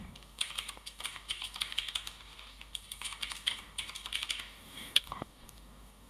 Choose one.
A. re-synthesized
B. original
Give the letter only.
A